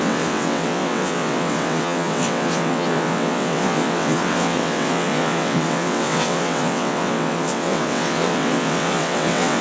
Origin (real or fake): fake